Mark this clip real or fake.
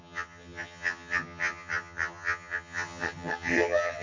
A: fake